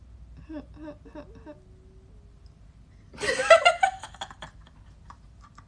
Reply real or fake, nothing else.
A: real